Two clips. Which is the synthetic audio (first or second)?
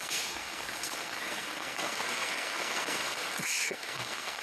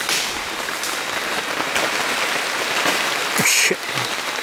first